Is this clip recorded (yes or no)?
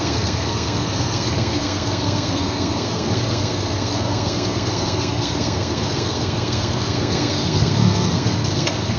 no